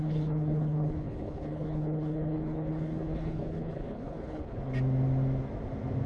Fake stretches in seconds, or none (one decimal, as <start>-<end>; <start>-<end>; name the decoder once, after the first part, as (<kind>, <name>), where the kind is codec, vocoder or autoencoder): 0.0-4.7 (codec, HILCodec)